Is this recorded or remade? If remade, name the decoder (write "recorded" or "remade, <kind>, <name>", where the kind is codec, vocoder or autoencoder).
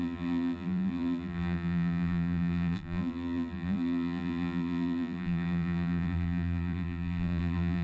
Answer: remade, vocoder, BigVGAN v2